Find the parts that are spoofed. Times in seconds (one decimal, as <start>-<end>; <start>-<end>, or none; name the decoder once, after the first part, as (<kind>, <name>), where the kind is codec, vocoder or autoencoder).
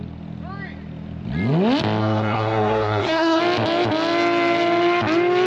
2.0-3.4 (codec, SNAC)